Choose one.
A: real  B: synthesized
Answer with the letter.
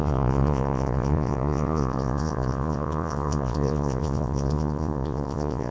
B